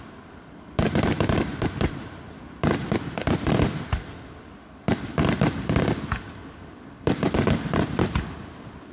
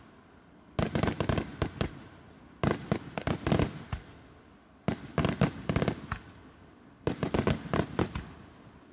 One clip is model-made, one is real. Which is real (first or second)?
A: second